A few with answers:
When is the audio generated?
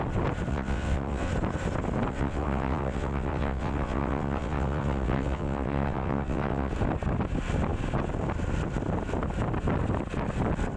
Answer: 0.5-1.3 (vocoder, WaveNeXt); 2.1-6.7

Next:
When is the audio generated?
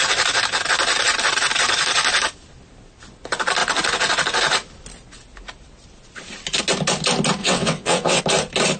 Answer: 7.4-8.2 (vocoder, WaveNeXt)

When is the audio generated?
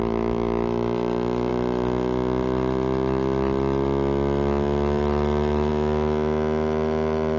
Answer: none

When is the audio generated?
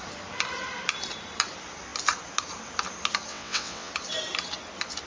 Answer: 3.3-3.9 (vocoder, WaveNeXt)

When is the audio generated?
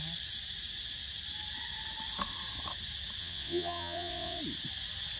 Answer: 3.2-4.4 (vocoder, WaveNeXt)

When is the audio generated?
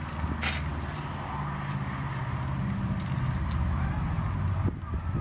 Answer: none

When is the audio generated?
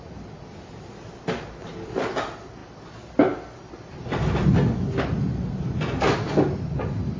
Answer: none